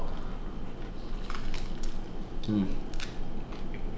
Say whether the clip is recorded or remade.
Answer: recorded